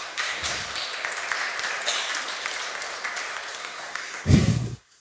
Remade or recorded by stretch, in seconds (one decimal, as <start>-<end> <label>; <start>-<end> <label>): 0.0-0.6 remade; 0.6-3.6 recorded; 3.6-5.0 remade